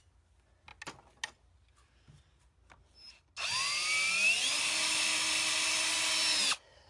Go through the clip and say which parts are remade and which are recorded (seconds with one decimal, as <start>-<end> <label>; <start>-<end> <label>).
0.0-6.9 recorded